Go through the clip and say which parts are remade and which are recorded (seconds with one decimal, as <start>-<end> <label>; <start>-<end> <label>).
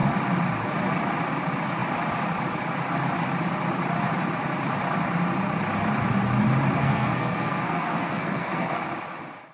0.0-6.8 recorded; 6.8-8.8 remade; 8.8-9.5 recorded